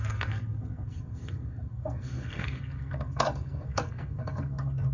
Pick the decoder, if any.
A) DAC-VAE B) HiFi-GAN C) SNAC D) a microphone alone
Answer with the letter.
C